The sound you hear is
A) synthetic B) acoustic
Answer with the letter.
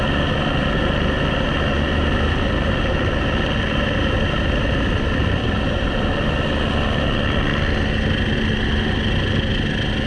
B